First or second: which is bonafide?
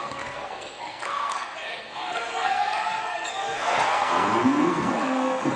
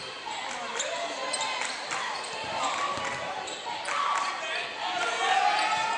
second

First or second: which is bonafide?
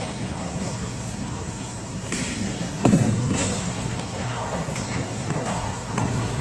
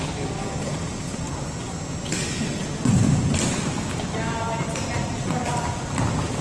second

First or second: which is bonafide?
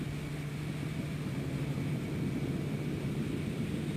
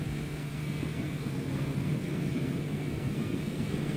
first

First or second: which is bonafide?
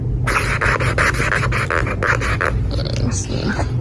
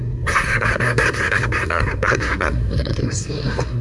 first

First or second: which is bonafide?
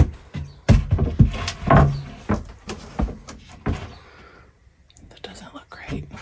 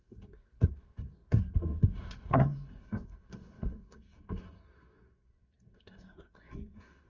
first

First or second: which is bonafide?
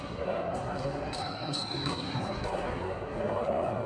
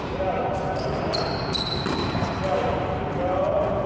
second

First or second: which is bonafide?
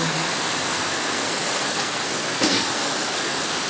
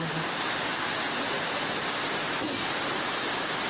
second